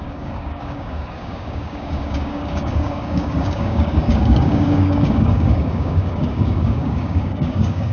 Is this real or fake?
fake